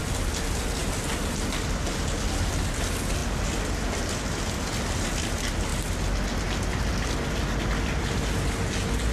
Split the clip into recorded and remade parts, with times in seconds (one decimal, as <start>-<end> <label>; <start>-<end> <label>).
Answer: 0.0-9.1 recorded